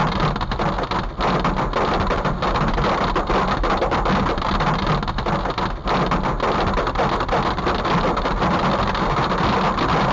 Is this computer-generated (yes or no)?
no